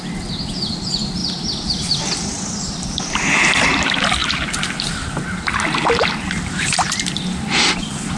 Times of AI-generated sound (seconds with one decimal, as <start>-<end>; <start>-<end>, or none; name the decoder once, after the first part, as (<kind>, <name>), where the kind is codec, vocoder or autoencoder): none